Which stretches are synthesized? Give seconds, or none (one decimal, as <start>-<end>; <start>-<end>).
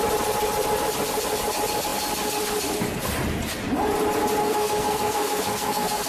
4.4-6.1